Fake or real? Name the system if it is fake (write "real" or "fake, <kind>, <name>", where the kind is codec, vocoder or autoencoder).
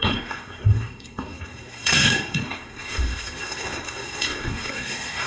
fake, codec, SNAC